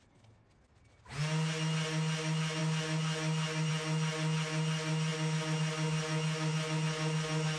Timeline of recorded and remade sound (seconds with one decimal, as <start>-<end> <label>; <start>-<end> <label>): 0.0-7.6 recorded